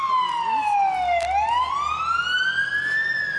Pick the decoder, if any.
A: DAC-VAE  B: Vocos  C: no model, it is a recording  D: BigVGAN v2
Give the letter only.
C